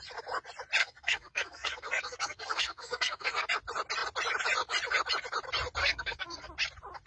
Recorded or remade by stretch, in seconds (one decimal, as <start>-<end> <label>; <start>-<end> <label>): 0.0-0.8 recorded; 0.8-3.5 remade; 3.5-5.8 recorded; 5.8-6.5 remade; 6.5-7.1 recorded